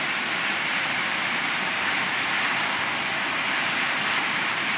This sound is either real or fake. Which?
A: fake